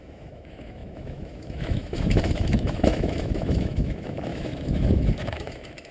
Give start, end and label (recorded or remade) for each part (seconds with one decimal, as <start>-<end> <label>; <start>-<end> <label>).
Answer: 0.0-5.9 remade